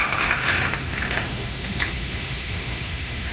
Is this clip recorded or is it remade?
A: remade